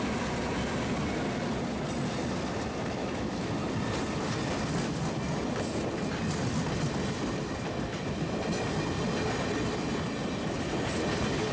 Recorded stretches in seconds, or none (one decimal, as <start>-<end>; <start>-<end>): 0.0-3.0; 3.5-11.5